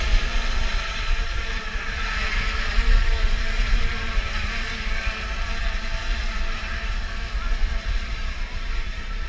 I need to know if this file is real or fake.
fake